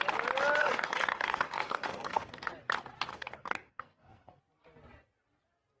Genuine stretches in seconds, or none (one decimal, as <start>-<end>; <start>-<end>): 0.0-0.6; 2.5-3.1; 4.4-5.8